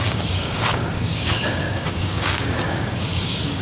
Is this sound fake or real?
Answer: fake